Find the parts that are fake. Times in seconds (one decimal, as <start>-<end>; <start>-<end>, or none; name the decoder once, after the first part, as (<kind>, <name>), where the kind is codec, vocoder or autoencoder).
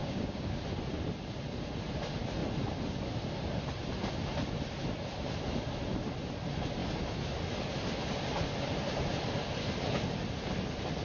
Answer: 0.0-0.6 (codec, DAC)